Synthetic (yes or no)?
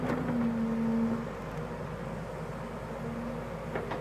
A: no